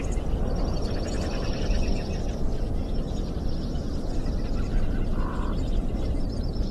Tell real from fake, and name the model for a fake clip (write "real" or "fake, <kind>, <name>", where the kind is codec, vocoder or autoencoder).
real